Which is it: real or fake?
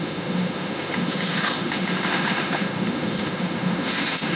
fake